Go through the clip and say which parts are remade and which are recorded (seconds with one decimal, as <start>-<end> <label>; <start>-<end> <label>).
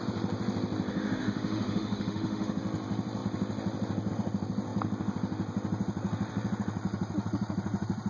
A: 0.0-0.9 recorded; 0.9-2.6 remade; 2.6-8.1 recorded